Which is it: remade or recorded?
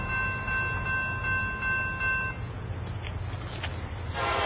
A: recorded